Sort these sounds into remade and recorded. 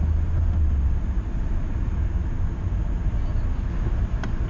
recorded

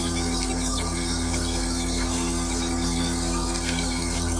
remade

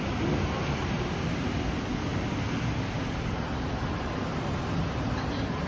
recorded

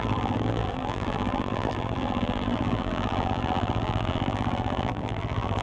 remade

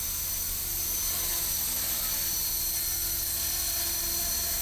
recorded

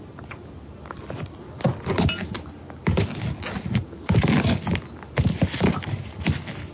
recorded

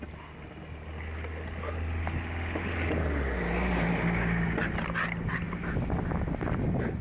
recorded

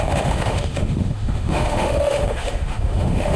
remade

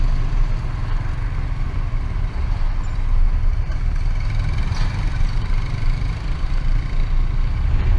recorded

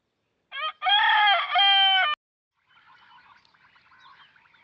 recorded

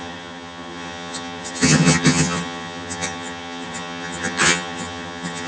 remade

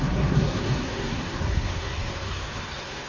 remade